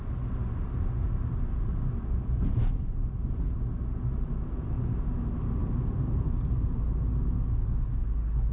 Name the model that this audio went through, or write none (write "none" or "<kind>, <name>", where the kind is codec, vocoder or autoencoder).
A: none